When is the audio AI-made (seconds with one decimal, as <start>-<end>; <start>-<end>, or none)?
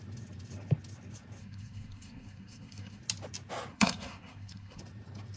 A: 1.4-3.0; 3.7-4.8